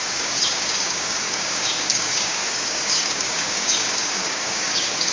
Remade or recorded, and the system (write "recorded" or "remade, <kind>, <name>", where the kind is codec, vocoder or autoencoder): remade, codec, DAC